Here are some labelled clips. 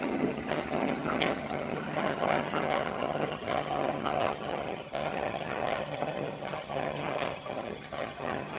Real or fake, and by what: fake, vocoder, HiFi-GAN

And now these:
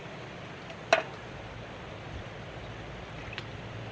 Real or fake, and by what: real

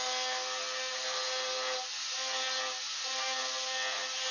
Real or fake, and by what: real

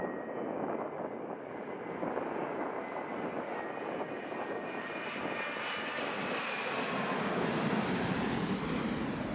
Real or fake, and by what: real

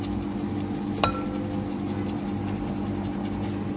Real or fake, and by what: real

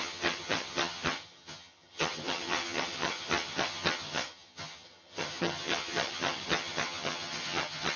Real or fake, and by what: fake, vocoder, HiFi-GAN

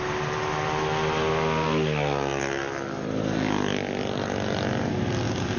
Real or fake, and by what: real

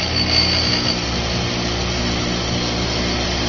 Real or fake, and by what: real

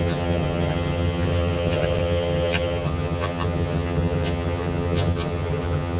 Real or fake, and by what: fake, vocoder, HiFi-GAN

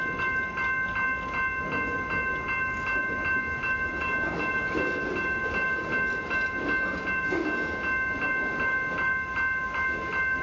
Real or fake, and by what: real